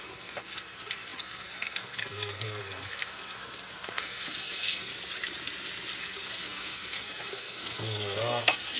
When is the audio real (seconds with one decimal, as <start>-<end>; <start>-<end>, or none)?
4.9-6.0